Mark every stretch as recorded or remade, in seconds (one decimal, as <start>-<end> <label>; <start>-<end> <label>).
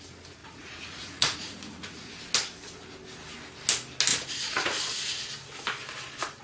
0.0-0.4 recorded; 0.4-2.1 remade; 2.1-4.1 recorded; 4.1-4.8 remade; 4.8-6.4 recorded